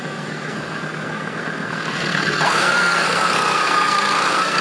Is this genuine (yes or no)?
no